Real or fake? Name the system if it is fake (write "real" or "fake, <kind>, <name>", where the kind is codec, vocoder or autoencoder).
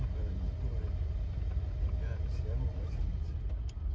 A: real